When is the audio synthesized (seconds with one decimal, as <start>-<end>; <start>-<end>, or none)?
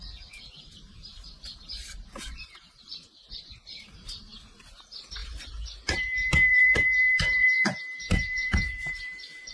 0.0-9.5